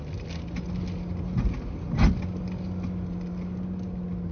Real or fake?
real